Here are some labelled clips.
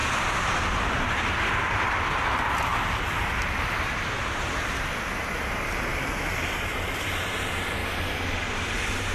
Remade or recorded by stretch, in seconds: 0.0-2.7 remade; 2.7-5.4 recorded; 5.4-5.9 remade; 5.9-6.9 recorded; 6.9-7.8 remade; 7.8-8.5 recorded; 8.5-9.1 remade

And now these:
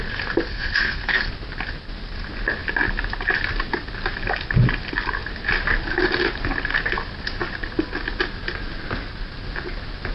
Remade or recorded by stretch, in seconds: 0.0-0.5 recorded; 0.5-1.3 remade; 1.3-10.1 recorded